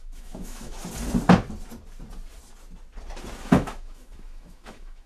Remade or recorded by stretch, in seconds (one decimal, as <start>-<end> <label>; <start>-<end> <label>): 0.0-0.8 remade; 0.8-3.4 recorded; 3.4-5.1 remade